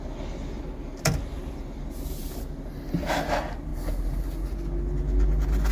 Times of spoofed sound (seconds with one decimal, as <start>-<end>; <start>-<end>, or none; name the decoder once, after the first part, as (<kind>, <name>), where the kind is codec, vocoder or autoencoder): none